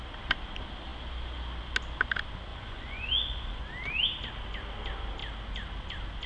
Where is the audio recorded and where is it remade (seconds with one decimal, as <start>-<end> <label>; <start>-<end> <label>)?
0.0-2.5 recorded; 2.5-3.6 remade; 3.6-6.3 recorded